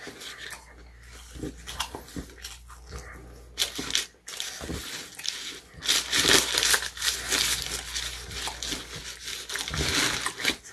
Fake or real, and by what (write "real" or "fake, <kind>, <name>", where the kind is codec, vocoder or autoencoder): real